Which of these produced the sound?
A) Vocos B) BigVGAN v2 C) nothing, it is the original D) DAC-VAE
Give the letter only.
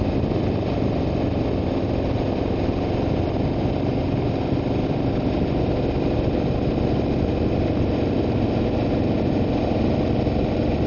C